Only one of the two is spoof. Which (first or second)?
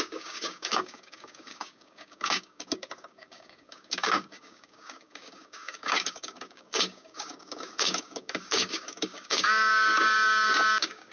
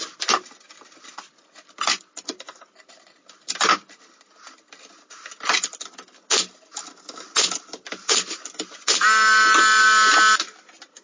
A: first